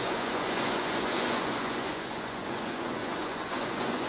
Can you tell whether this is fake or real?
fake